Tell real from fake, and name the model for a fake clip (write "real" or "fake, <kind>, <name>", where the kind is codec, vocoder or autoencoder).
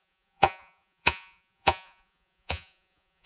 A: fake, vocoder, Vocos